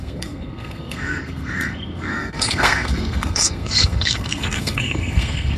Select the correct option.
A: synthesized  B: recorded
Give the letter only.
A